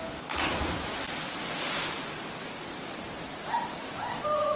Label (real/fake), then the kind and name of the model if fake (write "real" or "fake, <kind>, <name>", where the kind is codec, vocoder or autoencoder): real